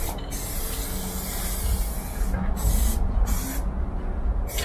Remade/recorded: recorded